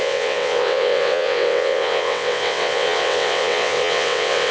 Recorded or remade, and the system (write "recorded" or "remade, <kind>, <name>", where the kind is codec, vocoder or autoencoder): remade, vocoder, WaveNeXt